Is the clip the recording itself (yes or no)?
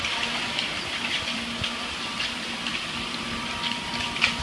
no